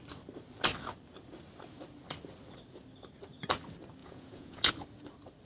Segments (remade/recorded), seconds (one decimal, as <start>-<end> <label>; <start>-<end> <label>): 0.0-4.0 recorded; 4.0-4.7 remade; 4.7-5.5 recorded

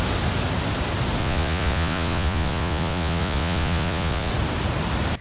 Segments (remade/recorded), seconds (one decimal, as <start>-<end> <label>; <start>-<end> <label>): 0.0-1.2 recorded; 1.2-4.3 remade; 4.3-5.2 recorded